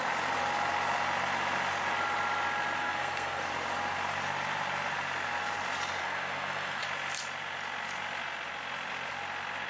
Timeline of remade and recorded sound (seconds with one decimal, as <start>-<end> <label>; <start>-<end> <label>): 0.0-2.8 recorded; 2.8-3.4 remade; 3.4-6.0 recorded; 6.0-6.8 remade; 6.8-9.7 recorded